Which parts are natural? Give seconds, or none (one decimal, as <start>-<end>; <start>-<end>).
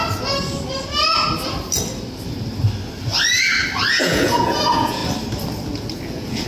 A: 0.0-3.9; 5.0-6.1